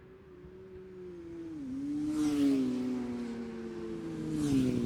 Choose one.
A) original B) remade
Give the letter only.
A